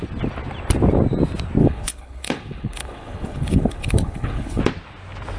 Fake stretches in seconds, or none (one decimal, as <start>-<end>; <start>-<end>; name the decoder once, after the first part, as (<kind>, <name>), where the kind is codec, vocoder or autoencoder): 1.6-4.6 (codec, HILCodec)